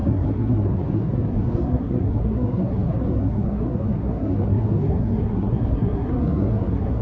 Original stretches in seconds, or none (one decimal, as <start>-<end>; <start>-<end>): none